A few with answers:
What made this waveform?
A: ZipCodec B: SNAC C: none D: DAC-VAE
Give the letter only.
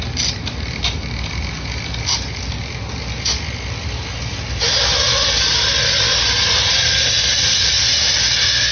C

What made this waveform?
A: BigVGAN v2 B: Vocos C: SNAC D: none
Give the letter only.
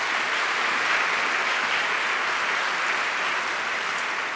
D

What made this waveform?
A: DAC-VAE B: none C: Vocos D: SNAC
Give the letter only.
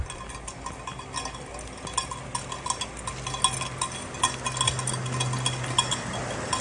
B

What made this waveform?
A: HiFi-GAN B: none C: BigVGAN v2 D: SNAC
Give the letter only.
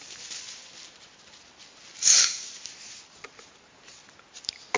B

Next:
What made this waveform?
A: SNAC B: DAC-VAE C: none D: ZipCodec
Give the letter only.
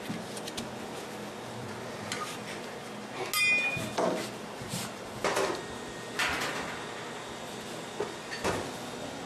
C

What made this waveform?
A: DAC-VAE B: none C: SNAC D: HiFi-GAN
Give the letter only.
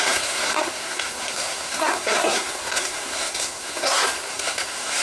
C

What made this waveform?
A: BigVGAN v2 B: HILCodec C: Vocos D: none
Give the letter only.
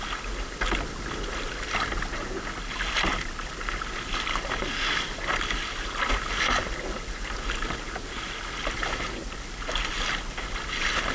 D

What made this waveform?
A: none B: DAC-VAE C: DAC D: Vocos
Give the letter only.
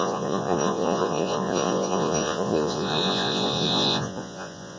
D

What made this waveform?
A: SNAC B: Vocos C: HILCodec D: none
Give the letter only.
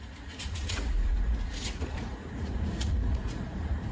B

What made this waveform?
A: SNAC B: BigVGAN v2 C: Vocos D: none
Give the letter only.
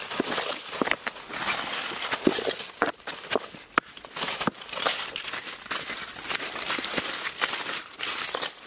D